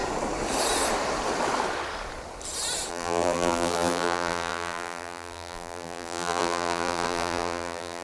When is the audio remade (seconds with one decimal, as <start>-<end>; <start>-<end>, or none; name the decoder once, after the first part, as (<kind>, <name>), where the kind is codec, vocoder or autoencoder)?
2.9-8.0 (vocoder, BigVGAN v2)